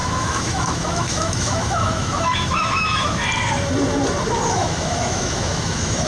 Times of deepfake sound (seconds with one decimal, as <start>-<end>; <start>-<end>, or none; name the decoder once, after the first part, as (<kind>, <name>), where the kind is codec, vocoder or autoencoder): 0.0-3.2 (autoencoder, DAC-VAE); 4.5-6.1